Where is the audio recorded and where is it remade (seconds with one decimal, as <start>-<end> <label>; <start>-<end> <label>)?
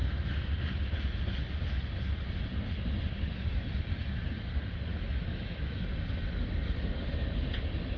0.0-4.9 recorded; 4.9-5.9 remade; 5.9-8.0 recorded